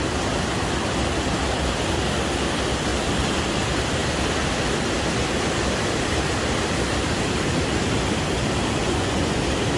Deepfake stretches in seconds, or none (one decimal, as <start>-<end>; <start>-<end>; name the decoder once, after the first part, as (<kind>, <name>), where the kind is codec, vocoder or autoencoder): 8.8-9.4 (vocoder, Vocos)

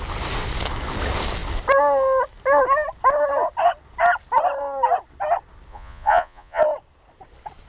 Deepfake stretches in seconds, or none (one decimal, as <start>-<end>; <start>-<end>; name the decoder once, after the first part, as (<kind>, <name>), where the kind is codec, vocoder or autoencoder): 5.7-6.6 (vocoder, Vocos)

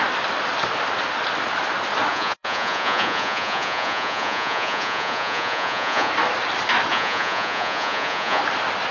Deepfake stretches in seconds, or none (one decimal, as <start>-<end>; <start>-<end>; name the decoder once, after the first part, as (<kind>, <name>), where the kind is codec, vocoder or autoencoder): 2.1-6.1 (vocoder, Vocos); 6.9-8.4

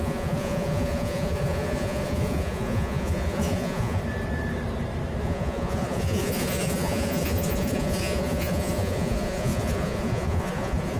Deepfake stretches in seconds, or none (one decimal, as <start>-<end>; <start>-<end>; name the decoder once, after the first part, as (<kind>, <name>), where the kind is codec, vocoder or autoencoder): 0.0-4.0 (vocoder, Vocos); 5.2-11.0

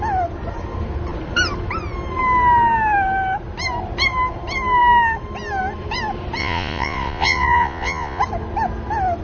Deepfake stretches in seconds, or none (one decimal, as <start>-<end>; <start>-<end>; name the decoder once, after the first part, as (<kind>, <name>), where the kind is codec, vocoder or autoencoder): 6.4-8.2 (vocoder, Vocos)